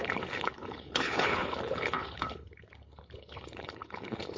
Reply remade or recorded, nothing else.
remade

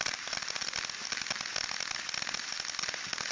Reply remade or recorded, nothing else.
recorded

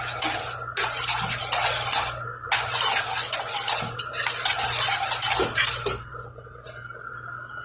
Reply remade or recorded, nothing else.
recorded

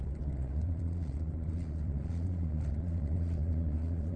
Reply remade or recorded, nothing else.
remade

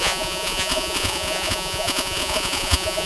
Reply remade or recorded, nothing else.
remade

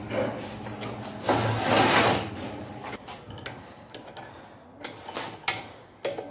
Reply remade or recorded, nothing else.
recorded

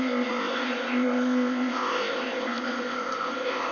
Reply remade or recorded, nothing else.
remade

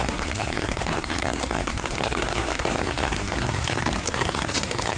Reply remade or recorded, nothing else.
remade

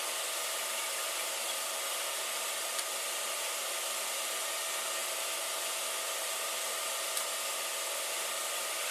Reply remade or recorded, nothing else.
recorded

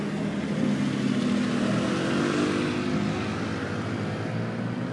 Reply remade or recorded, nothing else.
recorded